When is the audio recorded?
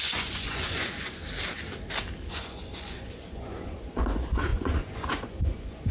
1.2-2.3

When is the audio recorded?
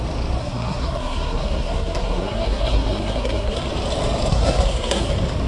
0.0-0.4; 3.7-4.3; 5.1-5.5